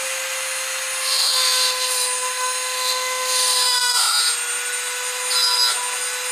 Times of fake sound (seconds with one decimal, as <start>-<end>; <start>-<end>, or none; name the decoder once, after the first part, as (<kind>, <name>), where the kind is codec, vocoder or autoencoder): 1.0-4.2 (autoencoder, DAC-VAE)